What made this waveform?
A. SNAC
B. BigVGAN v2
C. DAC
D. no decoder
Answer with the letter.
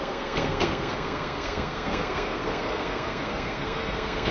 A